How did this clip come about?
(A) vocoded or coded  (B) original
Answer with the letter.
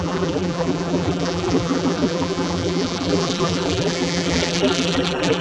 A